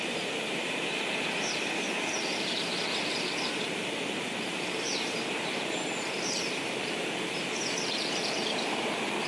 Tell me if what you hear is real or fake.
fake